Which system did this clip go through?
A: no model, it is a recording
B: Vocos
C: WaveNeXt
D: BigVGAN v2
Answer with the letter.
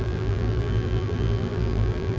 D